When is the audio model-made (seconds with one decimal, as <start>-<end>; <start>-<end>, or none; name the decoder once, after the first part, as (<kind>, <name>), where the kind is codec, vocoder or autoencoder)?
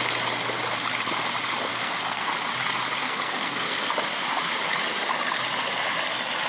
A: 1.7-2.3 (codec, SNAC); 3.0-3.9